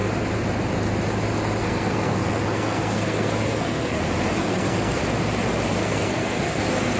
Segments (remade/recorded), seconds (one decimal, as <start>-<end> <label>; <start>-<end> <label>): 0.0-1.6 recorded; 1.6-4.0 remade; 4.0-4.4 recorded; 4.4-5.0 remade; 5.0-5.8 recorded; 5.8-6.6 remade; 6.6-7.0 recorded